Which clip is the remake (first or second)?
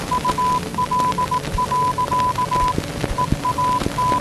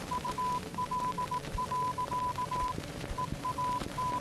second